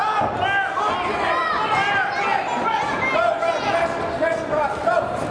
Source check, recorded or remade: recorded